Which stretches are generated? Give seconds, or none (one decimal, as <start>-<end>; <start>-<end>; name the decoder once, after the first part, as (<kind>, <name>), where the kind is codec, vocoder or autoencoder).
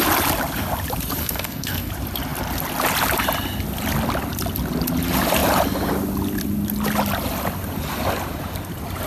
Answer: 1.2-1.9 (codec, SNAC)